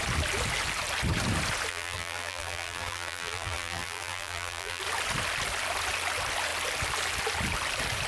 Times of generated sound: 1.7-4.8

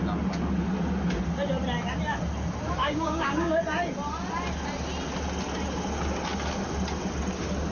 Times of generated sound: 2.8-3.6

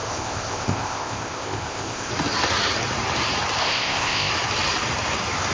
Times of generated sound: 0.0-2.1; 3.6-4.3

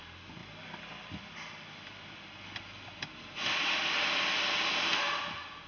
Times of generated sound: none